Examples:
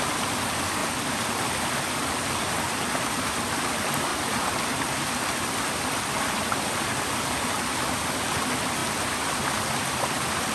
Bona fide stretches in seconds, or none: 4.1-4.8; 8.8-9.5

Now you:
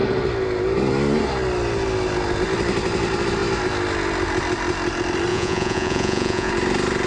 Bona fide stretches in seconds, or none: 0.0-5.3; 6.5-7.1

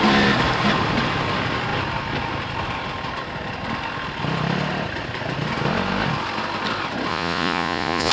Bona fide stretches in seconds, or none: 0.0-7.1

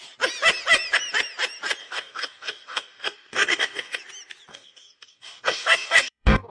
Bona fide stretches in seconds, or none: 0.0-1.8; 4.0-4.5